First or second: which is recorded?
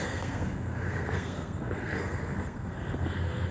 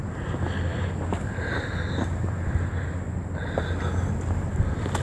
second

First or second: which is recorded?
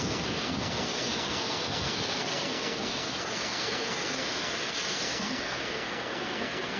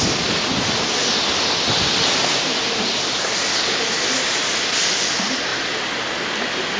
second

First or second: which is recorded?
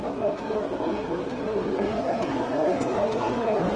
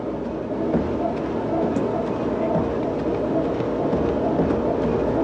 second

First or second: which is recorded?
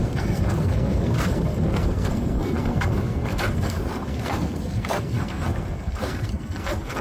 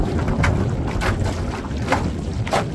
second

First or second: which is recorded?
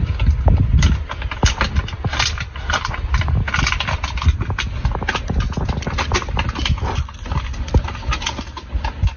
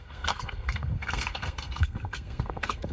first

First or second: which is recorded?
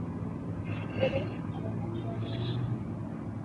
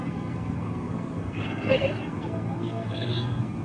first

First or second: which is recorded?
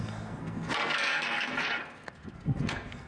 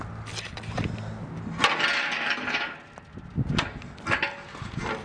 second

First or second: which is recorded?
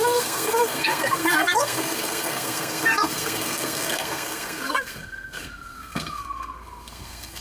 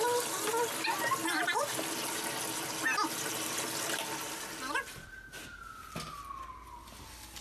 second